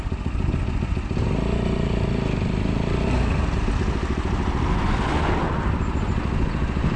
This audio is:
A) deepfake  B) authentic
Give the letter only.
B